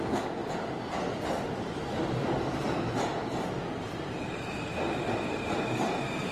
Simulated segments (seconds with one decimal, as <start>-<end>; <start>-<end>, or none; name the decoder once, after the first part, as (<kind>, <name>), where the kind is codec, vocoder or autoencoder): none